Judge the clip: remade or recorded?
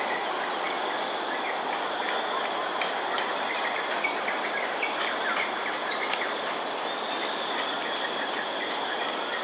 recorded